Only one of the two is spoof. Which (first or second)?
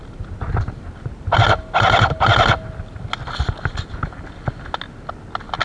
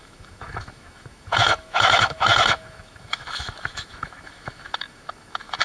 second